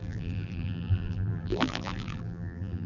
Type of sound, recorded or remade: remade